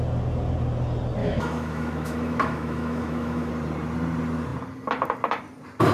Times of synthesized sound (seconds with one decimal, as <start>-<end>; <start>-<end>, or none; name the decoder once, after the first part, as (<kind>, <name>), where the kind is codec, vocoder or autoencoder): 1.2-3.5 (autoencoder, DAC-VAE)